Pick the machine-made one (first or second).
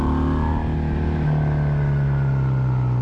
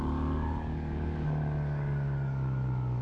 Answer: second